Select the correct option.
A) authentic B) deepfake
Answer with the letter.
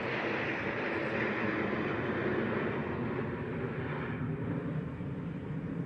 A